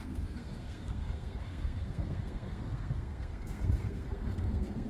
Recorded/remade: remade